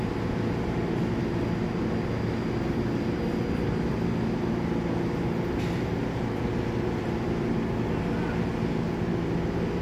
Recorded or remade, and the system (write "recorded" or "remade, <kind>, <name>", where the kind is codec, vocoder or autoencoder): recorded